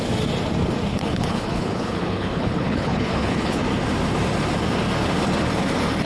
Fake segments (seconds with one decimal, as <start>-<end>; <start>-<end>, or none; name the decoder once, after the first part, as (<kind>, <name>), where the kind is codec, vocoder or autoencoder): 0.9-3.6 (codec, HILCodec)